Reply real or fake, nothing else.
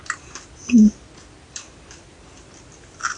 real